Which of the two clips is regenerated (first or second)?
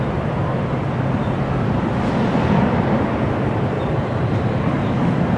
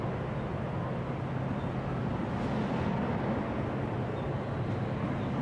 first